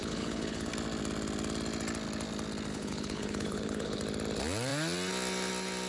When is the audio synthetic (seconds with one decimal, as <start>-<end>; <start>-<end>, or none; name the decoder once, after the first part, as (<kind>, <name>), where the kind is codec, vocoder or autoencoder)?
0.0-0.7 (codec, HILCodec); 2.7-4.0